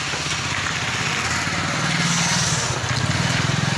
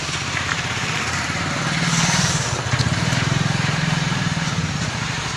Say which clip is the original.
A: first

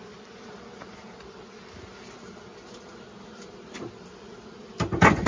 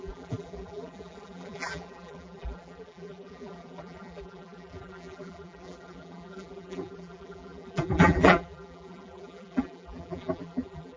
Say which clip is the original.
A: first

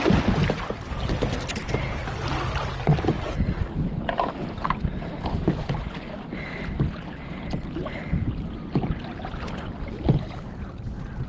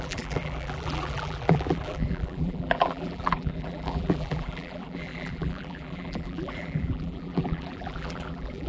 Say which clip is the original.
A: first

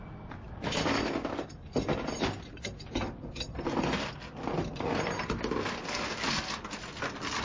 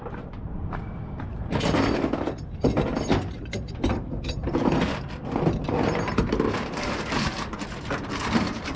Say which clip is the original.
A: first